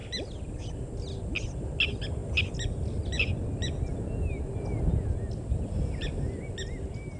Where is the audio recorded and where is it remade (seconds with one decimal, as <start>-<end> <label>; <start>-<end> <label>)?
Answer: 0.0-7.2 recorded